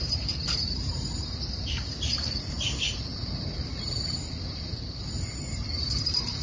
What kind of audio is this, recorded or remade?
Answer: remade